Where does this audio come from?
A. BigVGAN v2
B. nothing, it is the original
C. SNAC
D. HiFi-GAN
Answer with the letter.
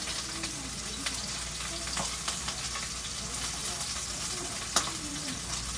B